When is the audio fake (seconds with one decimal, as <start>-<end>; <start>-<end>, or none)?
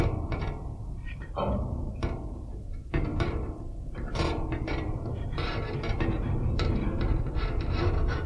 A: 0.0-8.3